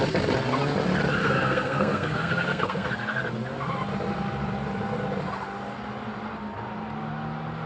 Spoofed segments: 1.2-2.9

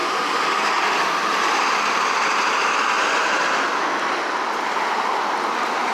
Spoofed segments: none

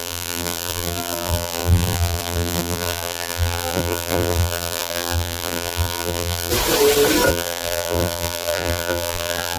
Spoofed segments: 0.0-6.5; 7.3-9.6

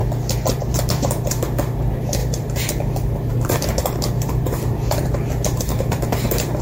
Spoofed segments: 0.6-6.6